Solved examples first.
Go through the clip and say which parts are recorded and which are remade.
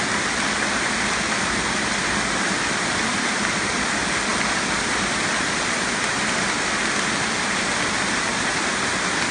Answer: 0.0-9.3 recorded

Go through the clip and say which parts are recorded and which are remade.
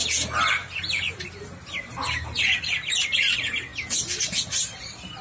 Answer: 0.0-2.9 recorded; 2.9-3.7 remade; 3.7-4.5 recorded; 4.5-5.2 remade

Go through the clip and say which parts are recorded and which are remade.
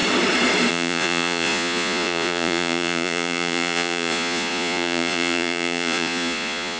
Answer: 0.0-0.7 recorded; 0.7-6.8 remade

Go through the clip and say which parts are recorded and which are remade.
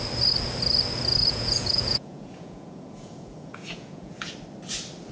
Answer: 0.0-1.2 recorded; 1.2-4.3 remade; 4.3-5.1 recorded